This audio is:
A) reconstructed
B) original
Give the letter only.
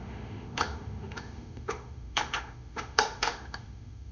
A